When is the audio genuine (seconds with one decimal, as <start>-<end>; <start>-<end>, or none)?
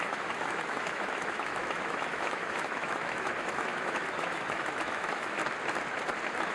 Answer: 5.4-6.5